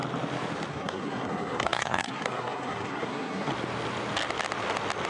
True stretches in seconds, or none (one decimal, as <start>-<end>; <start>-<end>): 0.0-0.7; 3.5-5.1